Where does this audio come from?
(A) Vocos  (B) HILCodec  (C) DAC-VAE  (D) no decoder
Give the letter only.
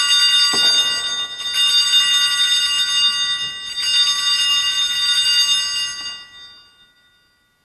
D